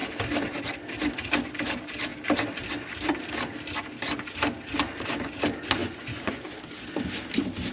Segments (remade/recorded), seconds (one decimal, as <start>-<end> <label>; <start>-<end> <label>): 0.0-5.8 recorded; 5.8-6.4 remade; 6.4-7.7 recorded